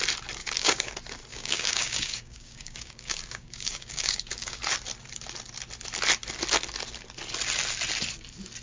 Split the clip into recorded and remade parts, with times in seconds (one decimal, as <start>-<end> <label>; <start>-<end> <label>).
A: 0.0-0.4 recorded; 0.4-0.9 remade; 0.9-1.3 recorded; 1.3-4.6 remade; 4.6-8.6 recorded